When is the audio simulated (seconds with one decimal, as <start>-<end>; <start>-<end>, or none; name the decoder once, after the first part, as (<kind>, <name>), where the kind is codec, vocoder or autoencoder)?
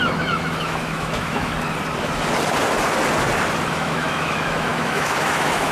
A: 0.0-1.5 (autoencoder, DAC-VAE); 3.7-5.7